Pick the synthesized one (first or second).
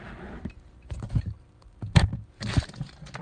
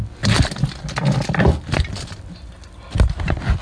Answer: first